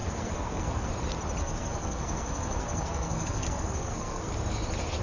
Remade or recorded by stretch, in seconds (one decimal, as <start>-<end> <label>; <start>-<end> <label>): 0.0-0.9 remade; 0.9-1.4 recorded; 1.4-4.3 remade; 4.3-5.0 recorded

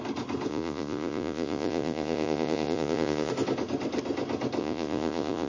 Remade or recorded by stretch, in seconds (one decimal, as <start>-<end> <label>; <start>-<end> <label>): 0.0-0.5 recorded; 0.5-3.3 remade; 3.3-4.6 recorded; 4.6-5.5 remade